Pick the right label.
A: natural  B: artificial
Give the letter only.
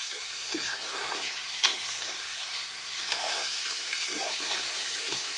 B